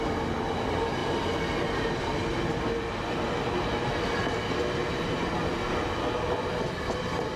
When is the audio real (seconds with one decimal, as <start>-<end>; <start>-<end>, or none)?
0.0-4.2; 4.8-7.4